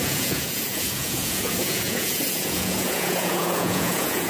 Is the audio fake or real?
fake